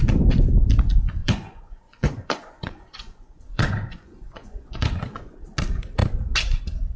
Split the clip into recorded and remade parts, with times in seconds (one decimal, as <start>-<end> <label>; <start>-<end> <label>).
0.0-1.2 recorded; 1.2-5.4 remade; 5.4-7.0 recorded